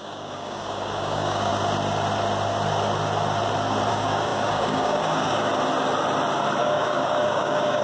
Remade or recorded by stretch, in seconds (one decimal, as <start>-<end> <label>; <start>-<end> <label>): 0.0-1.5 remade; 1.5-3.9 recorded; 3.9-5.5 remade; 5.5-6.6 recorded; 6.6-7.8 remade